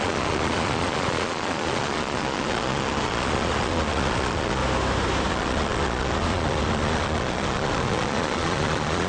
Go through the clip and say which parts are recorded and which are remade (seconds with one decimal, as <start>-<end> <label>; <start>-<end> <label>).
0.0-4.6 remade; 4.6-5.3 recorded; 5.3-9.1 remade

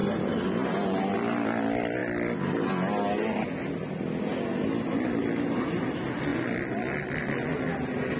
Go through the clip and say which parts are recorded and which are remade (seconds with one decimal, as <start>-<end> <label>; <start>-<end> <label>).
0.0-8.2 recorded

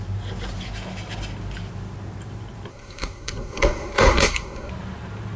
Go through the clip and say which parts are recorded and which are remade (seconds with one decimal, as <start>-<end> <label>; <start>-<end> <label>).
0.0-2.7 recorded; 2.7-4.7 remade; 4.7-5.4 recorded

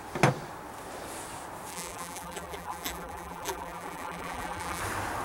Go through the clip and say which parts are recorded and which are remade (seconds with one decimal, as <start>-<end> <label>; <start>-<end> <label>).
0.0-1.7 recorded; 1.7-4.8 remade; 4.8-5.2 recorded

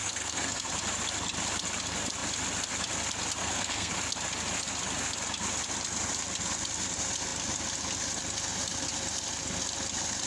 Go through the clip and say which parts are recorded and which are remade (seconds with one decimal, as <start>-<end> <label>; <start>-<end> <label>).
0.0-0.7 remade; 0.7-3.4 recorded; 3.4-3.9 remade; 3.9-10.3 recorded

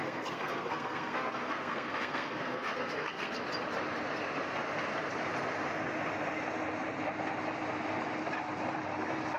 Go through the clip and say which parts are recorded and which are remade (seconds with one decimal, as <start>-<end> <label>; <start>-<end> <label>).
0.0-3.4 remade; 3.4-9.4 recorded